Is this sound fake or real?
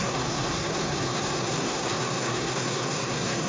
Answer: fake